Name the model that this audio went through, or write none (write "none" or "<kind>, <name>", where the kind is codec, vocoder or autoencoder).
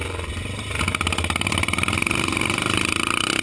none